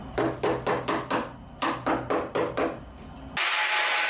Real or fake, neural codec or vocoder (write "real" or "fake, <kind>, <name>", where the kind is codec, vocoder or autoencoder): real